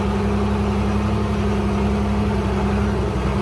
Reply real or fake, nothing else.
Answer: real